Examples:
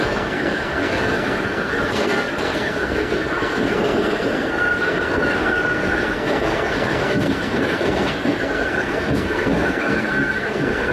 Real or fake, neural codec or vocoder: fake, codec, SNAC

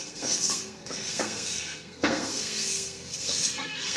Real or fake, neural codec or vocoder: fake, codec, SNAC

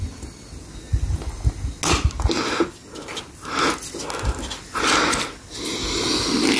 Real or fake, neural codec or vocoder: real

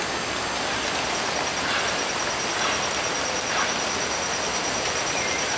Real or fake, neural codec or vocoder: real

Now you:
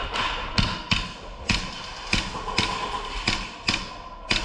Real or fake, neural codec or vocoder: real